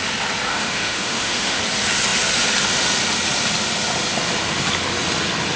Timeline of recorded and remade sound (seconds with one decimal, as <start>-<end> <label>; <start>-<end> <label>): 0.0-0.5 recorded; 0.5-1.6 remade; 1.6-5.6 recorded